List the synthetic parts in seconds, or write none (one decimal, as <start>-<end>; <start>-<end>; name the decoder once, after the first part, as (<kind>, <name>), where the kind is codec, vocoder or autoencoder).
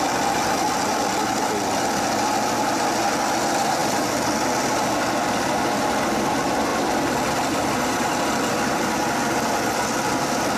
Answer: 6.7-8.9 (vocoder, BigVGAN v2)